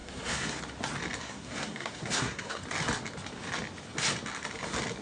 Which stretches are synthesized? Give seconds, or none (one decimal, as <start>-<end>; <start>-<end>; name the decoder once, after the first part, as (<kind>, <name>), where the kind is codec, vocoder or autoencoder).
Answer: 0.0-0.6 (codec, SNAC); 1.2-2.6